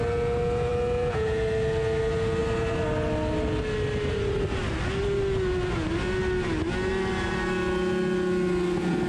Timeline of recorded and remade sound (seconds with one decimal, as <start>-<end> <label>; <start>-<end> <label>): 0.0-9.1 recorded